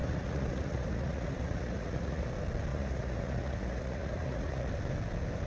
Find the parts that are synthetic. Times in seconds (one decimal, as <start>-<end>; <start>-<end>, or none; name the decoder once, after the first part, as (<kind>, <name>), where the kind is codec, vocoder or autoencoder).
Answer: 0.0-2.3 (vocoder, Vocos); 2.7-4.7

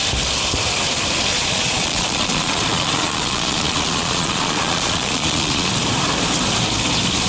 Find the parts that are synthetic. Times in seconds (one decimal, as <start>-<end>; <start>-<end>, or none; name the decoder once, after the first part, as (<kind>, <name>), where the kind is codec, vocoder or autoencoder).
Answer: 1.3-5.7 (vocoder, Vocos)

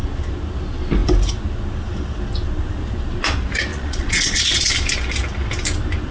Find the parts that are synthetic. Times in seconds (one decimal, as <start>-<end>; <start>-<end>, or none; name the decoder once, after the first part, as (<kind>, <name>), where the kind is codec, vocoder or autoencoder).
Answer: 3.7-4.7 (vocoder, Vocos)

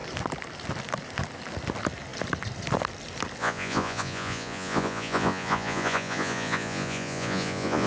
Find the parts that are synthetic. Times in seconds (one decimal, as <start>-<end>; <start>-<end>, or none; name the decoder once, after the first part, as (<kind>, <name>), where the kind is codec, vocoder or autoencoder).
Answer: 3.4-7.9 (vocoder, Vocos)

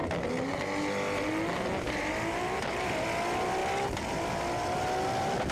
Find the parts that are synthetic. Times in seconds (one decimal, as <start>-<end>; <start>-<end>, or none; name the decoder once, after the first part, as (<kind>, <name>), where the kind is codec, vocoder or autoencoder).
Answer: none

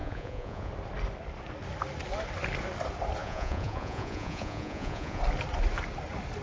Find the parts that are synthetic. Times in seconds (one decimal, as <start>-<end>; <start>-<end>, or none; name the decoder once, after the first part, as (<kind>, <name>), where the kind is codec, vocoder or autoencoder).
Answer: 0.0-0.7 (vocoder, Vocos); 3.2-5.2

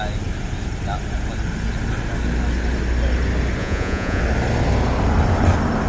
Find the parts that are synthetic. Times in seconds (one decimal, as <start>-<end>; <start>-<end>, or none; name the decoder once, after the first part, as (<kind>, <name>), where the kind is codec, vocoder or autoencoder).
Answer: 3.6-4.2 (vocoder, Vocos)